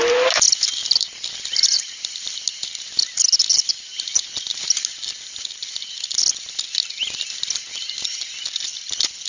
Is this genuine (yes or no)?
yes